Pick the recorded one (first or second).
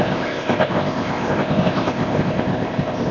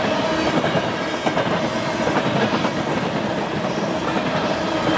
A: second